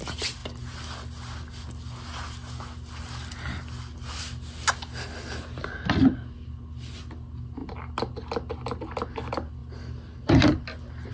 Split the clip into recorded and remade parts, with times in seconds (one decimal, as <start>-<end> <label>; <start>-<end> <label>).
0.0-11.1 recorded